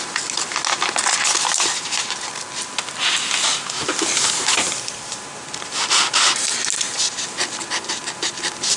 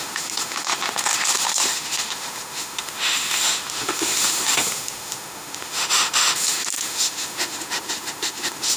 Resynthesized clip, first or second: second